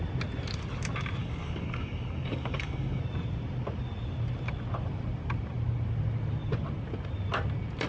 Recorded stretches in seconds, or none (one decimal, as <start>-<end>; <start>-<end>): 0.0-1.2; 3.0-7.9